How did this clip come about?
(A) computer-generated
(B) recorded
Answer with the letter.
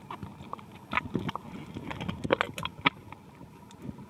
B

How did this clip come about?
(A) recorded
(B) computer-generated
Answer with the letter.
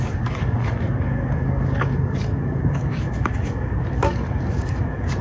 B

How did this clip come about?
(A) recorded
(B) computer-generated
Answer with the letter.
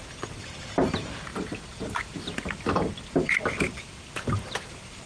A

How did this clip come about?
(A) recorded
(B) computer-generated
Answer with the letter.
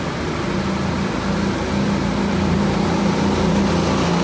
A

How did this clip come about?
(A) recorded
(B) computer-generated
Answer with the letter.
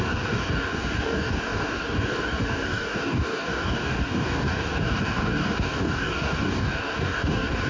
B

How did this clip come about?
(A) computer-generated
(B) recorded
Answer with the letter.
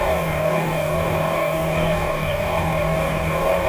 A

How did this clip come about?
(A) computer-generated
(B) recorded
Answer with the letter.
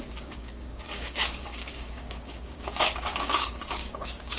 A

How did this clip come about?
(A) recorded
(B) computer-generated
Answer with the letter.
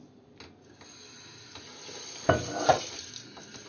A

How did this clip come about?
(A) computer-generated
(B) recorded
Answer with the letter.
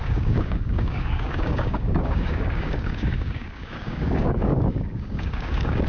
A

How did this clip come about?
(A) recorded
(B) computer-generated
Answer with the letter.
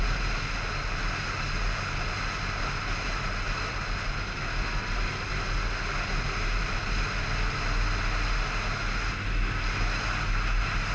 A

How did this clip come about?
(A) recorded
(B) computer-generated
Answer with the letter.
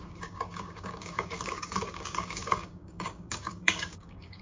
B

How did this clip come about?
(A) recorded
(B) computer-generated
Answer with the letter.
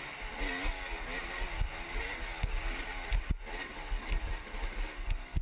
A